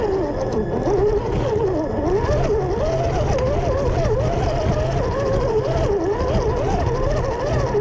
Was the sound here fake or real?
real